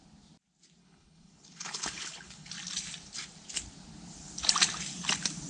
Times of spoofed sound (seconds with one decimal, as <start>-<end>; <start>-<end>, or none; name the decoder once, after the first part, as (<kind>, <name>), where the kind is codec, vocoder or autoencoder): 0.8-2.5 (codec, HILCodec)